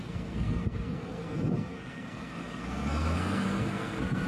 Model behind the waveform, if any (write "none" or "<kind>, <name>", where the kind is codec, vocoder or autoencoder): codec, SNAC